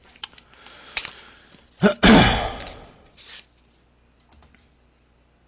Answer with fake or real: real